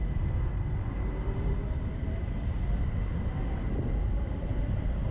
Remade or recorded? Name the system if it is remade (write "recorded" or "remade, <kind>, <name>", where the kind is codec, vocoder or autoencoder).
remade, vocoder, BigVGAN v2